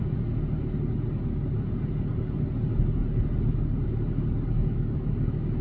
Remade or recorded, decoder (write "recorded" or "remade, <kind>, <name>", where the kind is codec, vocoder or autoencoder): recorded